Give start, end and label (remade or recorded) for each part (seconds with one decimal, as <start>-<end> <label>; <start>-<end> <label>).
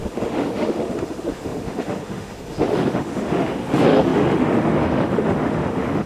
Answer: 0.0-6.1 remade